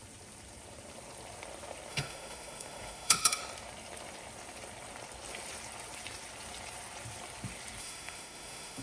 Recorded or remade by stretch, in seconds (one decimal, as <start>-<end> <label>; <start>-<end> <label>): 0.0-1.9 recorded; 1.9-3.4 remade; 3.4-7.8 recorded; 7.8-8.8 remade